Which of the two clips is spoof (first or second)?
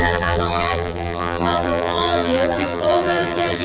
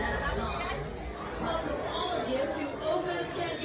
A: first